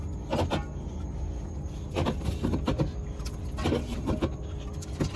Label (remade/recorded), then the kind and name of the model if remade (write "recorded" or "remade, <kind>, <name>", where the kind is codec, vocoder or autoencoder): recorded